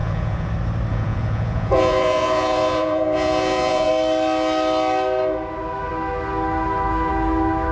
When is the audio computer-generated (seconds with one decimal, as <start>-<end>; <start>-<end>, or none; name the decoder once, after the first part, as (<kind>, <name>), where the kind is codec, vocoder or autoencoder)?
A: 0.0-0.5 (vocoder, Vocos); 0.9-3.9